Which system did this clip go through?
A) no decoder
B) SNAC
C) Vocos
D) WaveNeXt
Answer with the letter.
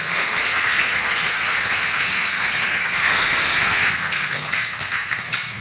B